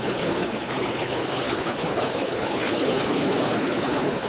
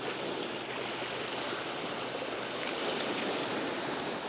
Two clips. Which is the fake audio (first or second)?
first